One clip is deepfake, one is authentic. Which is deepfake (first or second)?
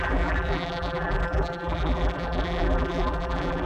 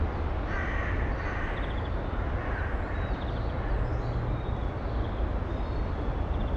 first